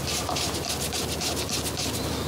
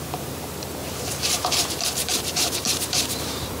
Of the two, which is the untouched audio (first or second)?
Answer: first